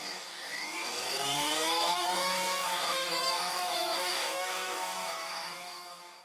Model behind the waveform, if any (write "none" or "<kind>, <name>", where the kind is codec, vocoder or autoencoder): codec, DAC